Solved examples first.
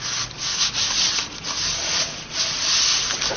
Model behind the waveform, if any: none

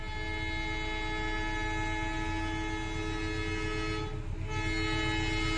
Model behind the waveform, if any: none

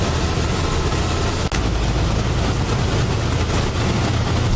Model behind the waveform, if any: none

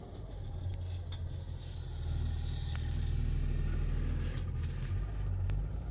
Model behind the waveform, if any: none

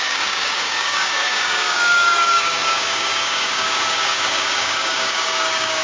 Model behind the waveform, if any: codec, DAC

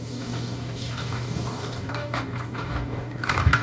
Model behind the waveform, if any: codec, DAC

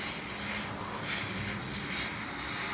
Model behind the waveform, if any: none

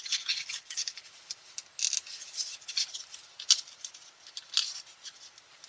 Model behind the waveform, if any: none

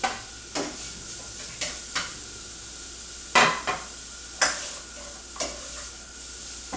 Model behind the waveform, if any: none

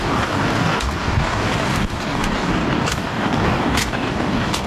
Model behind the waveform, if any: codec, DAC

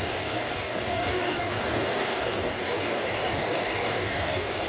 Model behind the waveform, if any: codec, DAC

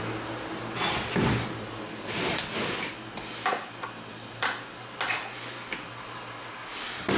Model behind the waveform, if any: none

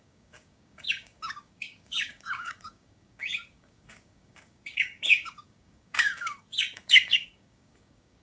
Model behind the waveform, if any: codec, DAC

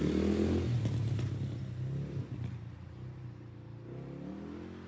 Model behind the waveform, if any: none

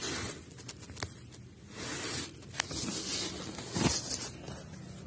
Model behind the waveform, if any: none